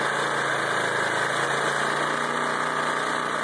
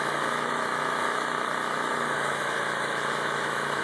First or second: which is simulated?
second